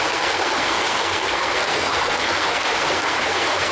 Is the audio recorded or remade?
remade